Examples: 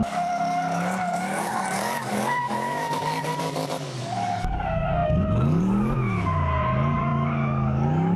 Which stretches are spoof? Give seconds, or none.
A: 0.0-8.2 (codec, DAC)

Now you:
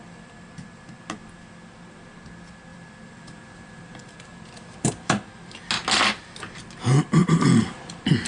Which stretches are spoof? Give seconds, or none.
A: 2.7-4.9 (vocoder, BigVGAN v2); 7.2-8.3

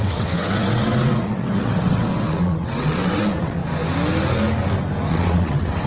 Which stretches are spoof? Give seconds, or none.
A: 0.0-3.6 (vocoder, WaveNeXt); 5.1-5.9

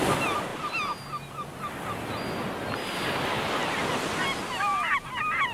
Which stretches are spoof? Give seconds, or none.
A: none

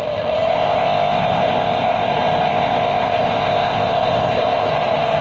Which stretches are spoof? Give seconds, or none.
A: 0.5-2.1 (codec, ZipCodec); 2.5-4.7

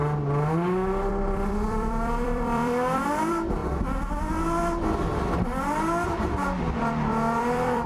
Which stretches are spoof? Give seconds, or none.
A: 1.1-3.6 (vocoder, BigVGAN v2); 6.2-7.9

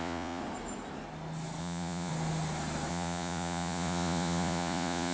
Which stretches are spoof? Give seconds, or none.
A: 0.0-0.4 (vocoder, Vocos); 1.6-2.1; 2.9-5.1

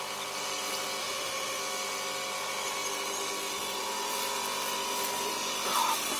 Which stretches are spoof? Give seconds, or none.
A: 1.0-1.6 (autoencoder, DAC-VAE)